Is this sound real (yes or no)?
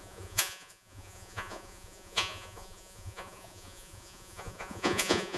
no